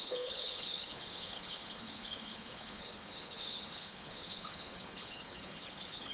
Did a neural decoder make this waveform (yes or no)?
yes